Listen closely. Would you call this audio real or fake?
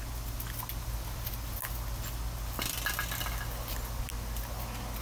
real